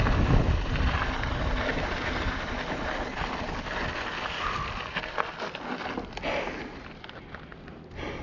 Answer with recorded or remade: recorded